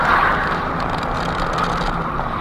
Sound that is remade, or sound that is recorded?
remade